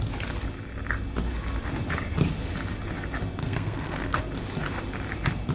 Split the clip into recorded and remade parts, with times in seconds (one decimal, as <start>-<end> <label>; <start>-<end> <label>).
0.0-3.4 recorded; 3.4-4.2 remade; 4.2-5.5 recorded